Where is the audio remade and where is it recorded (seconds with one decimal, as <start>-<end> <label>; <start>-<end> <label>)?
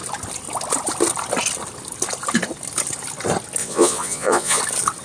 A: 0.0-3.6 recorded; 3.6-4.6 remade; 4.6-5.0 recorded